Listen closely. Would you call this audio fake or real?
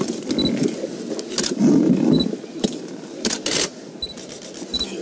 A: real